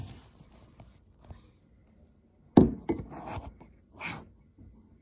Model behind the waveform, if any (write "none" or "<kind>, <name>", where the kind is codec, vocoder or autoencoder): none